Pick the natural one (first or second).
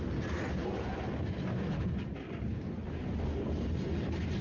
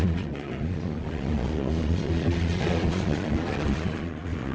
first